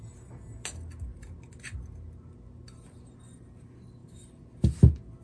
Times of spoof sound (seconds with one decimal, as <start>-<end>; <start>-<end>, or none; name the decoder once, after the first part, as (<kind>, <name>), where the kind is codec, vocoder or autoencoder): none